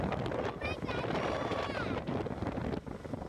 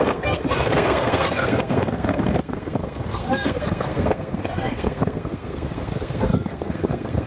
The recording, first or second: first